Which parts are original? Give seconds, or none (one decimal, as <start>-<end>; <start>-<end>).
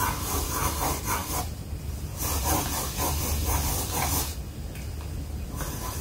0.0-6.0